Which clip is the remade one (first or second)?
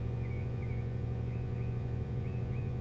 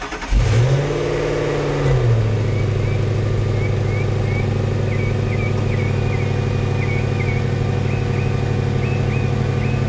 first